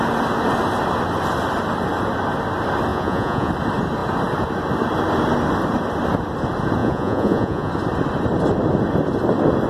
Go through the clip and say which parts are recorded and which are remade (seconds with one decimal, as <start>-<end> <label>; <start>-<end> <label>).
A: 0.0-2.9 recorded; 2.9-3.5 remade; 3.5-6.8 recorded; 6.8-7.7 remade; 7.7-9.7 recorded